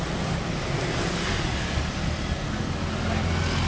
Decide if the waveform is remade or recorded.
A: recorded